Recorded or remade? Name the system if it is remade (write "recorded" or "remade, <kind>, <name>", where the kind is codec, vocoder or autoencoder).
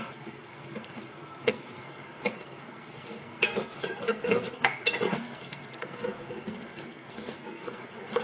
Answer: remade, codec, SNAC